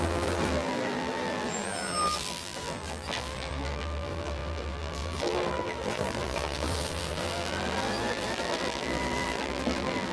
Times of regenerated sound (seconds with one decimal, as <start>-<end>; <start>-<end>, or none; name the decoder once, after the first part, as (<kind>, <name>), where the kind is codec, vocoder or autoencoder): 0.0-10.1 (vocoder, BigVGAN v2)